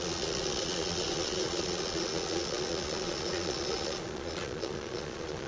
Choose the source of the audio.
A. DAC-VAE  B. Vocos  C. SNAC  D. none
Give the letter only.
B